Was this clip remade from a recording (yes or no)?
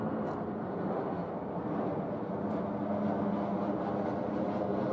no